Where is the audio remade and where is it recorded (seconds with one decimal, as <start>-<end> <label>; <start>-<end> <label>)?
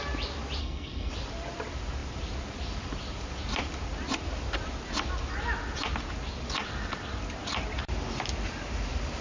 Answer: 0.0-0.6 recorded; 0.6-1.1 remade; 1.1-9.2 recorded